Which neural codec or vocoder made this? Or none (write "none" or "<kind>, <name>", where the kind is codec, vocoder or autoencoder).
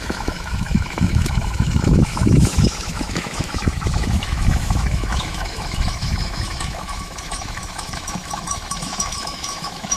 autoencoder, DAC-VAE